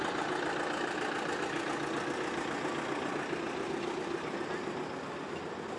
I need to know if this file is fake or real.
real